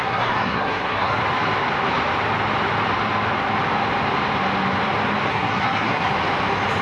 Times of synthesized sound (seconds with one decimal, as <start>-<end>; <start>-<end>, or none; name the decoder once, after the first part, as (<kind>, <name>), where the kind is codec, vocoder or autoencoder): 0.0-1.2 (codec, SNAC); 5.3-6.1